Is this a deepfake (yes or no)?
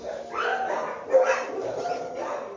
no